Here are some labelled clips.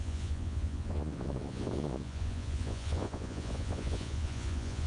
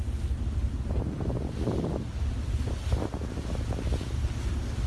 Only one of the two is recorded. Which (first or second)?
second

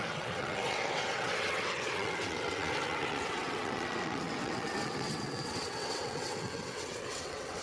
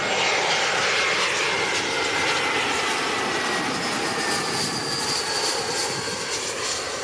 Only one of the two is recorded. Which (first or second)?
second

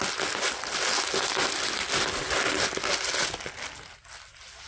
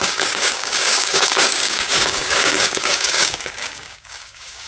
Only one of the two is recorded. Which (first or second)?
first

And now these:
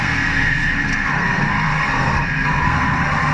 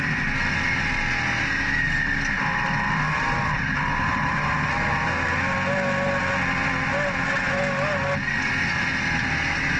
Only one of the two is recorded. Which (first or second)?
second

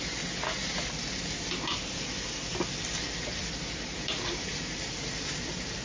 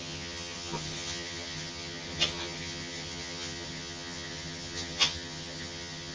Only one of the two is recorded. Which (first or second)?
first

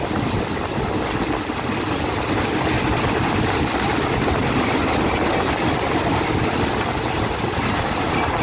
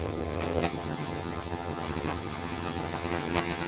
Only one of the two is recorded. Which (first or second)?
first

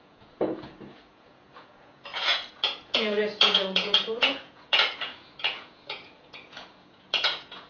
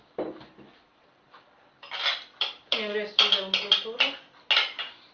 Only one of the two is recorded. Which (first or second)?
second